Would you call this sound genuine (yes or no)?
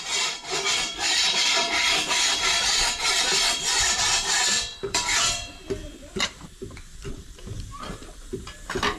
no